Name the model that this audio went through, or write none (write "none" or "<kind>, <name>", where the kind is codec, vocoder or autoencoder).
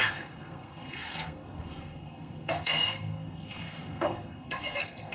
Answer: codec, SNAC